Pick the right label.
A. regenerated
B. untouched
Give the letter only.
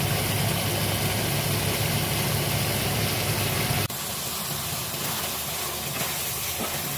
B